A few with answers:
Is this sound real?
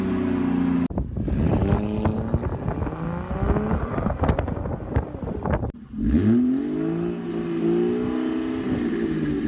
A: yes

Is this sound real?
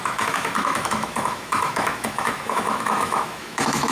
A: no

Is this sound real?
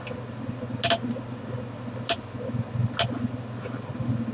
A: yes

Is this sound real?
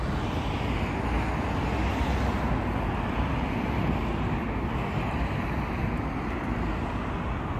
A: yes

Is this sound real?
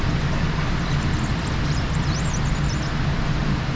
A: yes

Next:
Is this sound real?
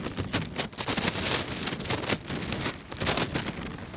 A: yes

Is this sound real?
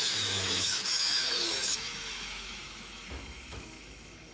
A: no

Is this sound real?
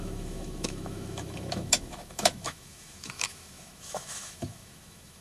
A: no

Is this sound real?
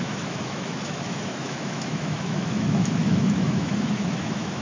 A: no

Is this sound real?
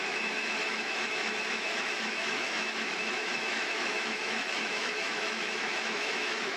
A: no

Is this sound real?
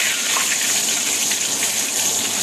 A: yes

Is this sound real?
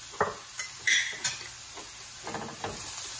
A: yes